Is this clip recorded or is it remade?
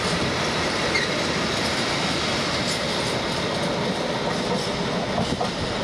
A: recorded